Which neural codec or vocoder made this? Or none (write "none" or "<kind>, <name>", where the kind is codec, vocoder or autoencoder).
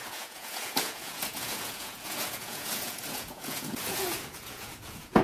vocoder, Vocos